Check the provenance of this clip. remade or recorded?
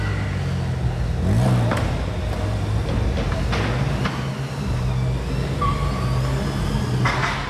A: recorded